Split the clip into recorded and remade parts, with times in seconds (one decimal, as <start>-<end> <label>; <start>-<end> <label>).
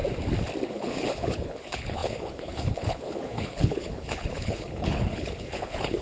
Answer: 0.0-0.7 recorded; 0.7-6.0 remade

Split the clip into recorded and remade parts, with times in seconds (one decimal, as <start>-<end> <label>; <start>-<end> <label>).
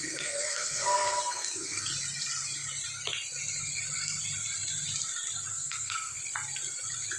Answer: 0.0-1.9 remade; 1.9-5.5 recorded; 5.5-6.2 remade; 6.2-7.2 recorded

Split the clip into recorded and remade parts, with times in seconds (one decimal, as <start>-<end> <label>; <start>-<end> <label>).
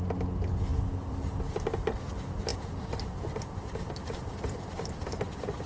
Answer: 0.0-0.7 recorded; 0.7-1.7 remade; 1.7-2.5 recorded; 2.5-5.0 remade; 5.0-5.7 recorded